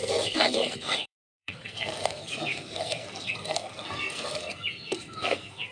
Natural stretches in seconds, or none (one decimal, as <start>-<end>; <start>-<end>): none